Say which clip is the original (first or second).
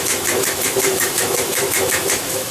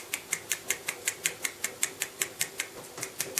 second